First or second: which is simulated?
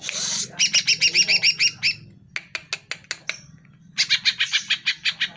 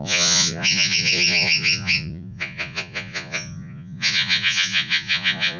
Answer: second